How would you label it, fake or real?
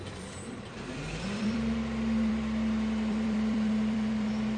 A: fake